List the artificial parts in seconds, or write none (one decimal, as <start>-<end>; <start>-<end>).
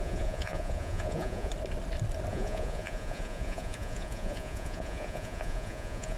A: 0.0-1.5; 2.3-6.2